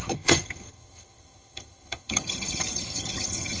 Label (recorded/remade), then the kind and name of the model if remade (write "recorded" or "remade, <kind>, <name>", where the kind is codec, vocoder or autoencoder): remade, vocoder, HiFi-GAN